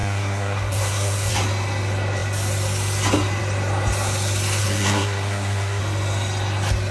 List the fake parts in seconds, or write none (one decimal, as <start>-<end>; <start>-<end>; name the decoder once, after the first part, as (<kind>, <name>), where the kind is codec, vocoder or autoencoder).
0.0-1.3 (codec, SNAC); 4.6-5.8